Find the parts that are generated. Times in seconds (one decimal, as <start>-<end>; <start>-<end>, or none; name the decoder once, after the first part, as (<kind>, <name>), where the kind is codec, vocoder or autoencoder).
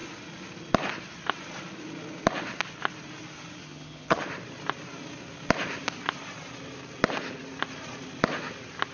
3.6-4.2 (vocoder, HiFi-GAN)